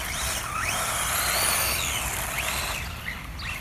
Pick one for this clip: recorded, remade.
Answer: recorded